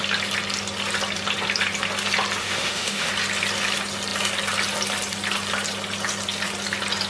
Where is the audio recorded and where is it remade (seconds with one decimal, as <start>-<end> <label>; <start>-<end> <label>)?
0.0-2.4 recorded; 2.4-3.1 remade; 3.1-7.1 recorded